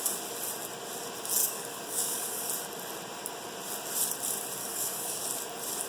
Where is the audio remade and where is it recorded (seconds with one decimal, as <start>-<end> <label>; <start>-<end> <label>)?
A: 0.0-1.4 recorded; 1.4-2.5 remade; 2.5-4.6 recorded; 4.6-5.2 remade; 5.2-5.9 recorded